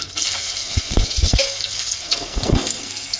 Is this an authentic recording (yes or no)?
no